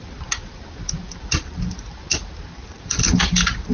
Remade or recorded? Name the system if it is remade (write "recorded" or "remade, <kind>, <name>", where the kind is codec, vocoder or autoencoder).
recorded